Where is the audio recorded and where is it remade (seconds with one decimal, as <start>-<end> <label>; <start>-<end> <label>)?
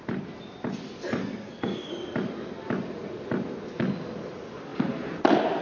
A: 0.0-1.2 recorded; 1.2-1.9 remade; 1.9-5.6 recorded